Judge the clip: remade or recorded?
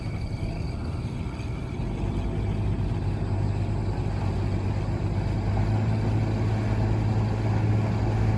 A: recorded